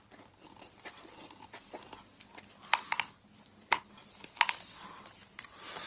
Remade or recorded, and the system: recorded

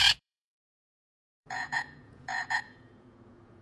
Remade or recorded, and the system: remade, vocoder, Vocos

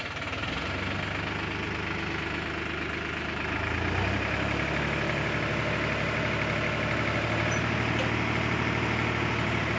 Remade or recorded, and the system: recorded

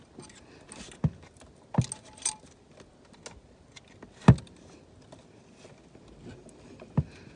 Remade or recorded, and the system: recorded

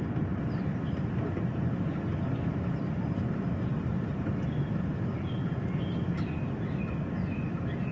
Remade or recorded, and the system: recorded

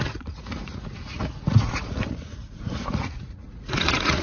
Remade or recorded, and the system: remade, vocoder, Vocos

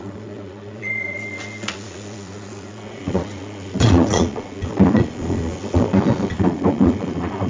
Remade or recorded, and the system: remade, vocoder, Vocos